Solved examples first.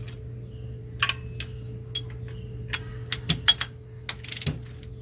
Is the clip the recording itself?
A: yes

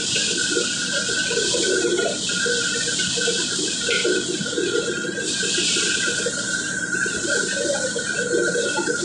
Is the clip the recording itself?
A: yes